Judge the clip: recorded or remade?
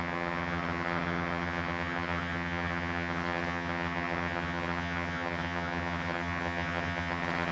remade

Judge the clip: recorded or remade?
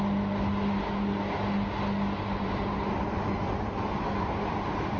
recorded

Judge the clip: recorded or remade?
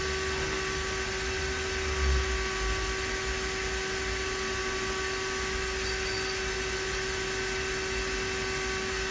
recorded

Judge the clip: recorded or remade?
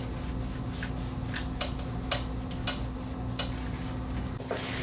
recorded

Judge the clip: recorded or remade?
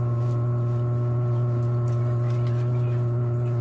recorded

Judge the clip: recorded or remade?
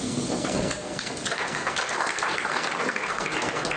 remade